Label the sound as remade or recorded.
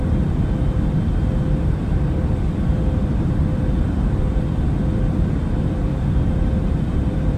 remade